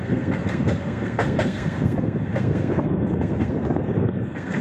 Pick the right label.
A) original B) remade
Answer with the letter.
B